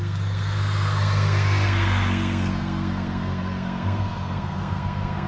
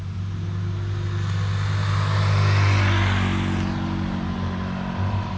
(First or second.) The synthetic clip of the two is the first